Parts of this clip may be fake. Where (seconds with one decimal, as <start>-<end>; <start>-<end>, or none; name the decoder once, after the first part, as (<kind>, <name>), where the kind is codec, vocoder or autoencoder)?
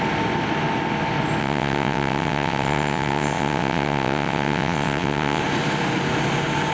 1.4-5.4 (vocoder, WaveNeXt)